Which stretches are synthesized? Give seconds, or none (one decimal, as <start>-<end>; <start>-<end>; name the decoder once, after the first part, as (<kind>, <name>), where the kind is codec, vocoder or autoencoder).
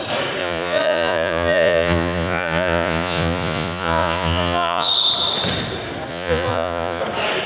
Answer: 0.4-4.9 (vocoder, Vocos); 6.1-7.0